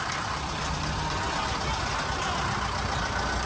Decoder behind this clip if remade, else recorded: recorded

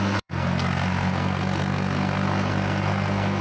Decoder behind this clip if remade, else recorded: remade, codec, SNAC